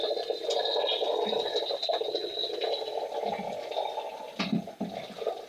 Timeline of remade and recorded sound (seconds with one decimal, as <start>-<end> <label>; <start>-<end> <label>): 0.0-5.5 recorded